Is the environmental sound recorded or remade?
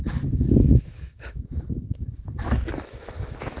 remade